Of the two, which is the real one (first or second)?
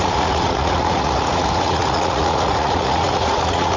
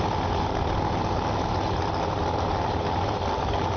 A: second